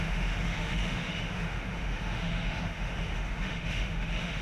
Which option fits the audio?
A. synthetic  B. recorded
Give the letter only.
A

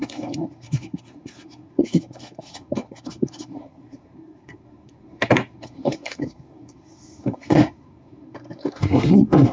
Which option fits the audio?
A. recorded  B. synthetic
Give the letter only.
B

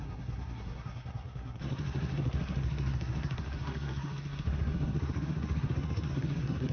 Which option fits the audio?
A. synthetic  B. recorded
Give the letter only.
A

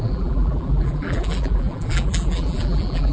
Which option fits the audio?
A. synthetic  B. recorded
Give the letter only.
A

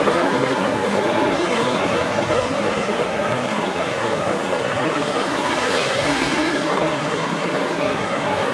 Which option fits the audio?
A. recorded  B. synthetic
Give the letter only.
B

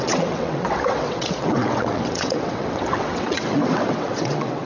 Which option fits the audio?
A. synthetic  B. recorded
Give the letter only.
A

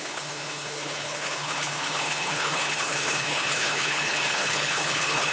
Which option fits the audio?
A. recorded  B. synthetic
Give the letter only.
B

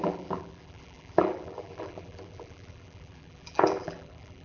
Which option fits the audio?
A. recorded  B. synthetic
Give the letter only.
B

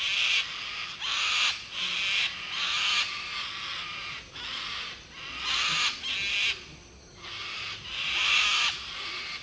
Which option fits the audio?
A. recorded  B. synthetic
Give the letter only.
A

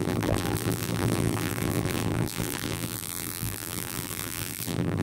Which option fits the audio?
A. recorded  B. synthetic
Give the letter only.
B